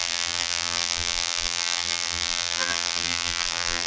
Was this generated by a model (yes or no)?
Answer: yes